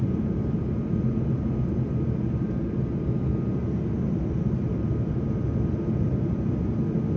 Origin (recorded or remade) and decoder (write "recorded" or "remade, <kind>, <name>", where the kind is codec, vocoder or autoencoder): recorded